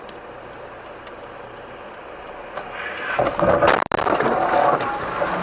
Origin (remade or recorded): recorded